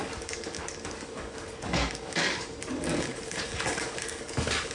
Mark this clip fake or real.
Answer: fake